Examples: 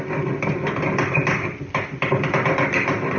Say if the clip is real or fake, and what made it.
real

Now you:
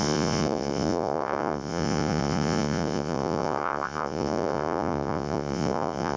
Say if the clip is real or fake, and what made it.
fake, vocoder, Vocos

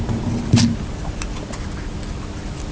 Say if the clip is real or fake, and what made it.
real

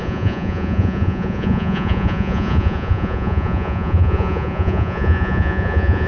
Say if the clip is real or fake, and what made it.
fake, vocoder, Vocos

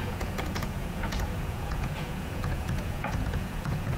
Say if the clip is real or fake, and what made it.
fake, vocoder, Vocos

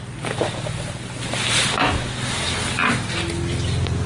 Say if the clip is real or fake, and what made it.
real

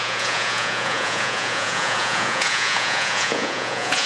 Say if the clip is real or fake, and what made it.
fake, vocoder, Vocos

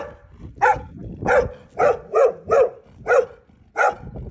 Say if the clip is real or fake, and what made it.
real